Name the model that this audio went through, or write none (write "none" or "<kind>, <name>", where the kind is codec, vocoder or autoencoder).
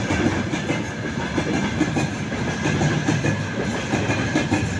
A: none